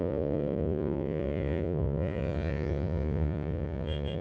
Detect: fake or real fake